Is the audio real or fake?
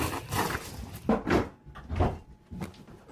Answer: real